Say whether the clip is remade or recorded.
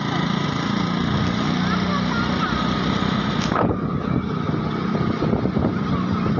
recorded